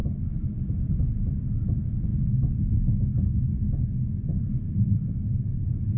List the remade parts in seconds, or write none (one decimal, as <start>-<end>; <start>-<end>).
none